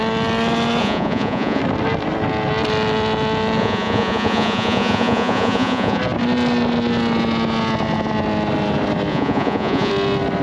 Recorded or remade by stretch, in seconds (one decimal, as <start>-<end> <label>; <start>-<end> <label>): 0.0-0.8 recorded; 0.8-1.6 remade; 1.6-3.6 recorded; 3.6-6.0 remade; 6.0-9.1 recorded; 9.1-9.9 remade; 9.9-10.4 recorded